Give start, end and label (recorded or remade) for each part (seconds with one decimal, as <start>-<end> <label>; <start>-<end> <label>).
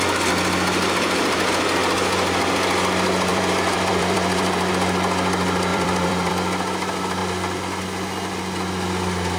0.0-3.3 recorded; 3.3-4.7 remade; 4.7-5.7 recorded; 5.7-6.3 remade; 6.3-9.4 recorded